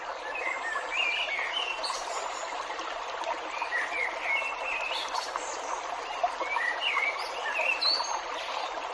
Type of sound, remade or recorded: recorded